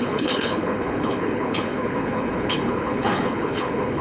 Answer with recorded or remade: remade